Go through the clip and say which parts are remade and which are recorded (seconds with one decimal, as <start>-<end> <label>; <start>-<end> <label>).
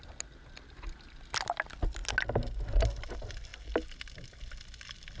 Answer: 0.0-5.2 recorded